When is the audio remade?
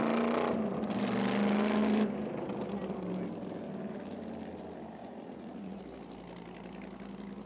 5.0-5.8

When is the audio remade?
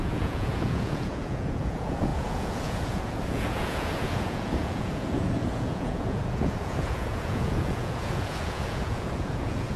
0.0-9.8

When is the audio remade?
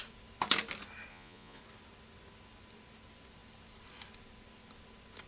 1.1-1.6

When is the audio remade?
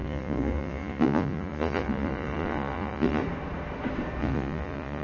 0.0-3.2; 4.2-5.0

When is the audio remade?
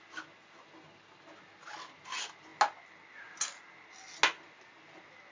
none